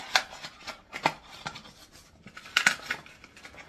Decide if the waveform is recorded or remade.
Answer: recorded